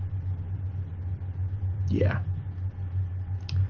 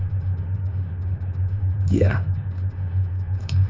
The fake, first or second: second